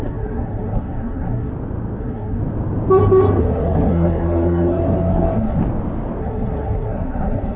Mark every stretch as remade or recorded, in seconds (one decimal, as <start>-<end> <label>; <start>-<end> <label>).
0.0-1.5 remade; 1.5-2.0 recorded; 2.0-2.4 remade; 2.4-3.4 recorded; 3.4-5.6 remade; 5.6-6.2 recorded; 6.2-7.6 remade